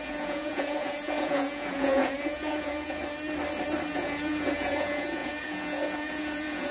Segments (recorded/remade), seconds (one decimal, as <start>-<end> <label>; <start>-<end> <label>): 0.0-3.0 remade; 3.0-3.9 recorded; 3.9-6.7 remade